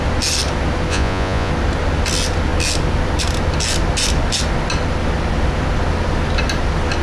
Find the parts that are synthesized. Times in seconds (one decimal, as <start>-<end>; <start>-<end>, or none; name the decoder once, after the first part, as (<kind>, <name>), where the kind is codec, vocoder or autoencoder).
0.9-1.5 (vocoder, Vocos)